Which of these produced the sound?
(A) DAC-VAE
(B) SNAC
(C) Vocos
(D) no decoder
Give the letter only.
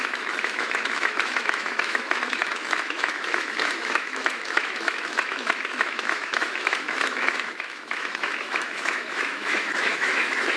A